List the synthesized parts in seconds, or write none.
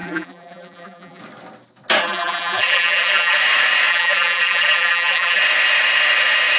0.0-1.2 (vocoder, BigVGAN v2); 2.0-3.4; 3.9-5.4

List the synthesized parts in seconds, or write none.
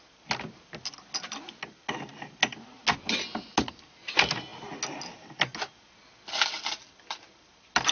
none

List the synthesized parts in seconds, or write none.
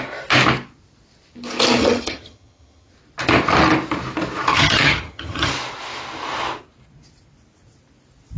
1.8-2.9 (vocoder, HiFi-GAN); 4.5-5.5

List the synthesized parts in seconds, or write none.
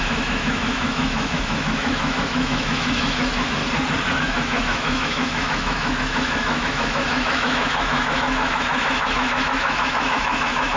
0.0-3.6 (autoencoder, DAC-VAE); 4.2-10.8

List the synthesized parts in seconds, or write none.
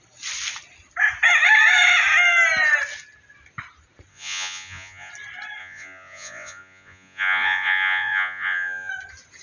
4.1-5.1 (vocoder, Vocos); 5.6-8.9